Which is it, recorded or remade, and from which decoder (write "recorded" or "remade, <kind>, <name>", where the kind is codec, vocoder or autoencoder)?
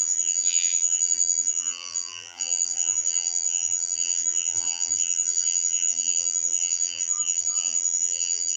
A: remade, vocoder, BigVGAN v2